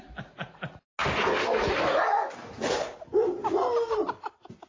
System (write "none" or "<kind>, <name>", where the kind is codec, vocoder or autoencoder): none